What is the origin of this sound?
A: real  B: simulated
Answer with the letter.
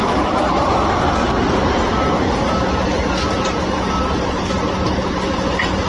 A